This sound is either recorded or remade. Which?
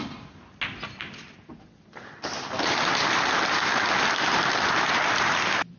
recorded